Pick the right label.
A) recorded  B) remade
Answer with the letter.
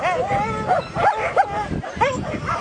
A